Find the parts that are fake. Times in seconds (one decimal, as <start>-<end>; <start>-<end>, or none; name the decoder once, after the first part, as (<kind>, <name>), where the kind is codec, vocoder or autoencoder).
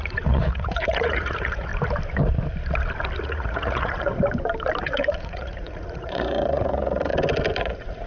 0.0-1.7 (vocoder, Vocos); 3.2-4.1; 4.8-7.1; 7.6-8.1